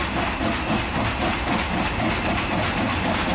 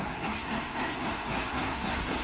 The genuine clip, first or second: first